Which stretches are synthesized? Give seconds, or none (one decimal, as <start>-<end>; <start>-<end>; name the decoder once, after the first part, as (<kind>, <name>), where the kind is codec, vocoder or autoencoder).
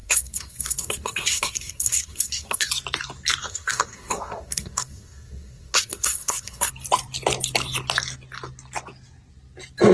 0.0-2.7 (codec, SNAC); 3.4-6.7